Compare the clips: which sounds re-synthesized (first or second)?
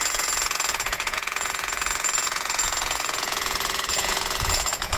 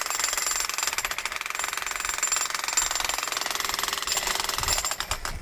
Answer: first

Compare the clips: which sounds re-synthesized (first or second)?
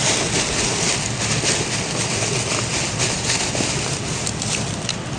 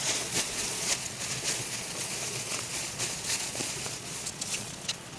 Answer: second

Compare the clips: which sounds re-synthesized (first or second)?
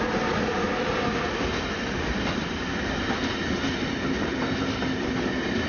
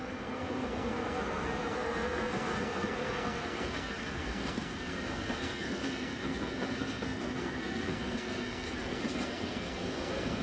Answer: second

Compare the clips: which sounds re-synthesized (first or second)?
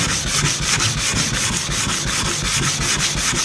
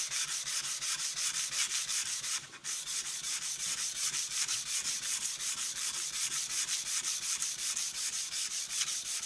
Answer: second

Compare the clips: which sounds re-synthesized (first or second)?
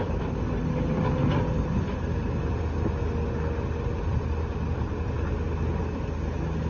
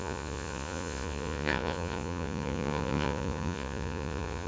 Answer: second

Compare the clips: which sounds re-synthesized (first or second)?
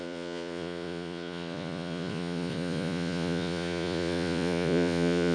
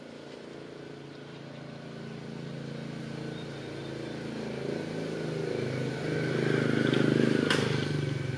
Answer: first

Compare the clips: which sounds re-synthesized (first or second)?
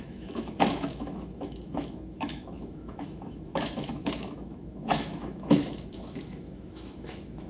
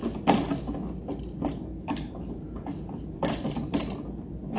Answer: first